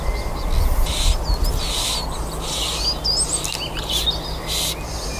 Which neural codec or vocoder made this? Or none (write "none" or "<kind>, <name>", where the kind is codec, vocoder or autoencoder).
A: none